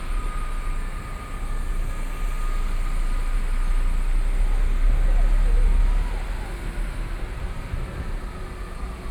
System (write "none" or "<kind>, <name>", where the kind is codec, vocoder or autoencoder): none